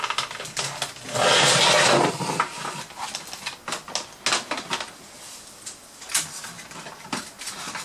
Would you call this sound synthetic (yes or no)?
no